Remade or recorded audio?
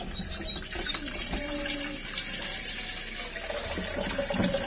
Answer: recorded